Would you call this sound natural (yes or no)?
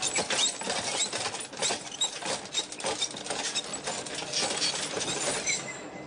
yes